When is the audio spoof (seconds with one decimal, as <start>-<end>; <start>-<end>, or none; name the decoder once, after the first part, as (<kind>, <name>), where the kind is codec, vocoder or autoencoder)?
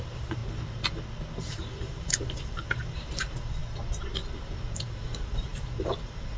0.0-0.4 (vocoder, BigVGAN v2); 1.4-3.6; 4.8-6.4